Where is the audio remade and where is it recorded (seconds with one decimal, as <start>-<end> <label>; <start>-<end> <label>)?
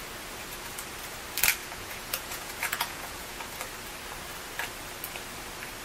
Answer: 0.0-1.6 recorded; 1.6-3.4 remade; 3.4-5.8 recorded